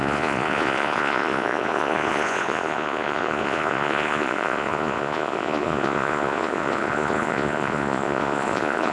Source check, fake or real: fake